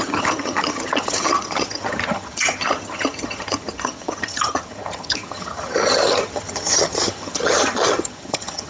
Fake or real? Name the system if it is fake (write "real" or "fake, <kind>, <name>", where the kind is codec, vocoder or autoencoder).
fake, vocoder, HiFi-GAN